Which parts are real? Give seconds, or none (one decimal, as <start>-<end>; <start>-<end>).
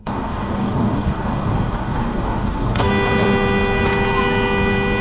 2.9-5.0